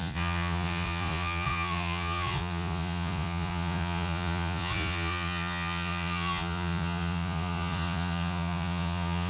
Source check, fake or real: fake